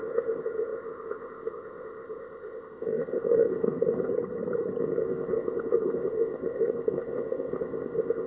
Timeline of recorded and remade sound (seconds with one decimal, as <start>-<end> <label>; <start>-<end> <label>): 0.0-4.1 remade; 4.1-4.8 recorded; 4.8-8.3 remade